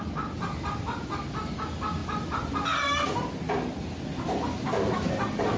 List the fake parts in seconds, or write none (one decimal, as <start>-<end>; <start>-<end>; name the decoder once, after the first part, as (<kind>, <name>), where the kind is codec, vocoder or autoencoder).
none